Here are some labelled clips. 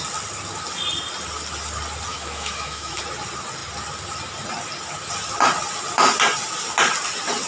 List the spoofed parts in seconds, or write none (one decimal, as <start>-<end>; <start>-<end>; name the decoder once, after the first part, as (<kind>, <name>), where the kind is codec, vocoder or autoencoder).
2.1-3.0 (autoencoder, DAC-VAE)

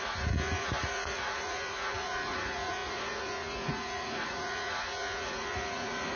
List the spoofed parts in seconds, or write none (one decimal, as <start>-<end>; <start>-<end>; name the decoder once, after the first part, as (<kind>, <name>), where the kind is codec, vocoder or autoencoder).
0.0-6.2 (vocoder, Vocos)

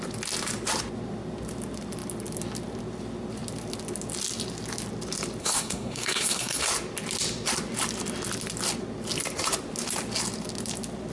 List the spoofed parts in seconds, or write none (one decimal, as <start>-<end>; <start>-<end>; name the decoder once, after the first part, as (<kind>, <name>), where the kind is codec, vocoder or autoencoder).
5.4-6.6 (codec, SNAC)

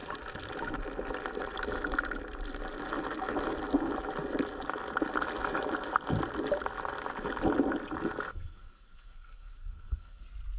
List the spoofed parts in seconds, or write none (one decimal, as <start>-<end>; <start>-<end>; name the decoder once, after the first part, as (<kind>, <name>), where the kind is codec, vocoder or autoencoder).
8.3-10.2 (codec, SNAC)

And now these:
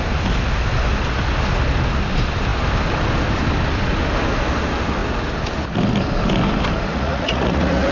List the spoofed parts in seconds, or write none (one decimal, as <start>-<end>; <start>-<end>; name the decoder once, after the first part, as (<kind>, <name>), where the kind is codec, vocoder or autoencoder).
6.9-7.9 (vocoder, Vocos)

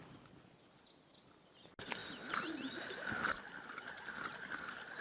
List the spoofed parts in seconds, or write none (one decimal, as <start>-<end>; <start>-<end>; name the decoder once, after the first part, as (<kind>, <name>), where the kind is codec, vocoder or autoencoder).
none